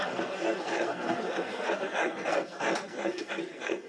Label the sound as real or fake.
fake